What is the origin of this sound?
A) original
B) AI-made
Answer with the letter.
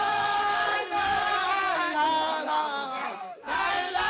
B